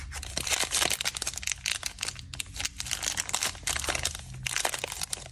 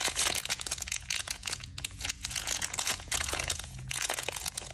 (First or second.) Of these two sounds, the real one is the first